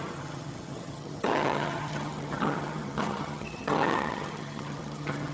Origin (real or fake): fake